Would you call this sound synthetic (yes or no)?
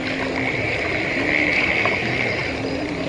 no